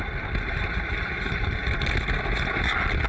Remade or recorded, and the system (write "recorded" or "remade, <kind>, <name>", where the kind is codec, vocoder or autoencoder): recorded